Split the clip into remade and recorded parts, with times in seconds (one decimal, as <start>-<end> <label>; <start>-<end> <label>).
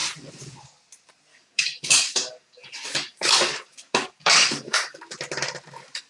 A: 0.0-1.3 recorded; 1.3-5.0 remade; 5.0-6.1 recorded